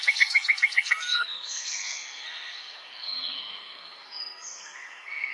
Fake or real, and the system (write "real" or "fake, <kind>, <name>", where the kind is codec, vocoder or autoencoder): fake, codec, SNAC